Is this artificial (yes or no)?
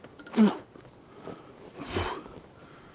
yes